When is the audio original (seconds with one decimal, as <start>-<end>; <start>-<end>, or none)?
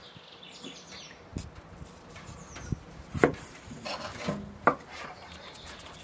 0.0-6.0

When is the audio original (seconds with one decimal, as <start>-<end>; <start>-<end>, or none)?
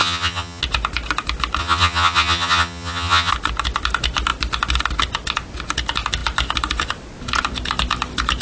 0.6-1.6; 3.3-8.4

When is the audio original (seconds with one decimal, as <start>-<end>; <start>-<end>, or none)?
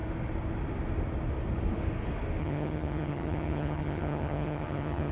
0.0-2.4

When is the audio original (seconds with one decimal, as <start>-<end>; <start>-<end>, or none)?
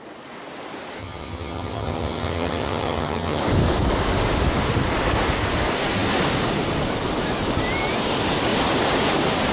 0.0-1.0; 3.4-9.5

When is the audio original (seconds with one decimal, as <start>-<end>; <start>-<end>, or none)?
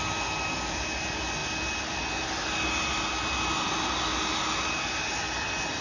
0.0-5.8